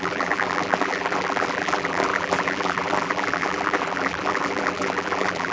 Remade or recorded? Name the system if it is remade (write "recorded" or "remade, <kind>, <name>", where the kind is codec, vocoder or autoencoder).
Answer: remade, vocoder, BigVGAN v2